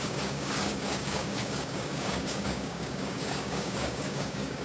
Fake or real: fake